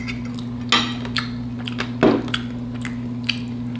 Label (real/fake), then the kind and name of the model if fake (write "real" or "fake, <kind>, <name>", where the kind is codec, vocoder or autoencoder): real